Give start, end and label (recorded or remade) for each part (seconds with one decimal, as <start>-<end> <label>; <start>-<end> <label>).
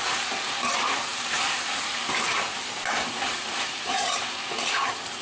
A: 0.0-1.1 recorded; 1.1-4.2 remade; 4.2-5.2 recorded